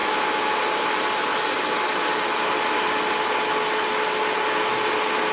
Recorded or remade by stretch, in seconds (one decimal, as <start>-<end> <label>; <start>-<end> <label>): 0.0-5.3 recorded